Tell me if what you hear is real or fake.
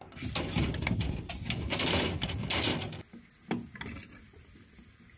real